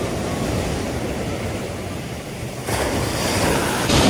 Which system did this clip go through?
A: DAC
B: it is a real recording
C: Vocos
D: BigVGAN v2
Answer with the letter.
D